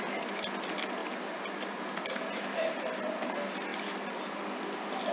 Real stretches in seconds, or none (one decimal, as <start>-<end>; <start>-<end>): 0.0-5.1